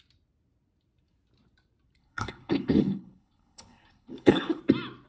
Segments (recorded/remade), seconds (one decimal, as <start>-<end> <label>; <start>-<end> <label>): 0.0-2.0 recorded; 2.0-4.6 remade; 4.6-5.1 recorded